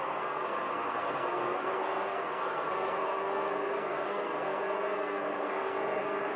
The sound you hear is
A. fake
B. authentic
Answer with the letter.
A